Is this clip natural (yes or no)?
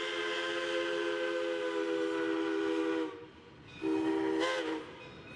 yes